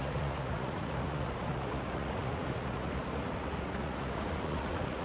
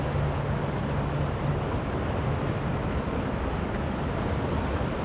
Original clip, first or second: second